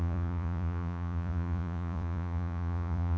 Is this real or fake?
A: fake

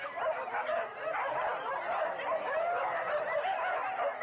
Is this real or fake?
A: real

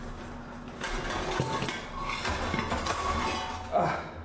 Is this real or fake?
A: real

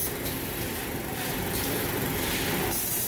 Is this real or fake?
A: fake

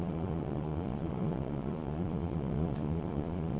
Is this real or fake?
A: fake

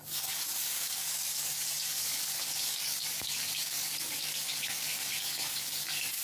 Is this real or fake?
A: fake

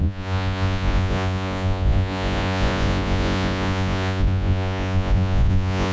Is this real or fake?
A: fake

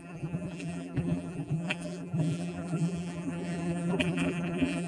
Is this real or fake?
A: fake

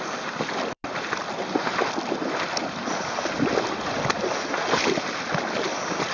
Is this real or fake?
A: real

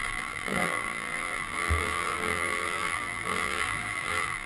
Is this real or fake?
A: fake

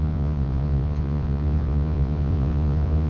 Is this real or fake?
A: fake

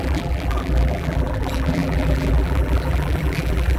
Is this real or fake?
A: fake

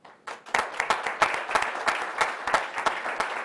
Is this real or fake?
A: real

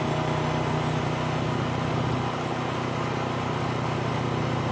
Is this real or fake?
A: real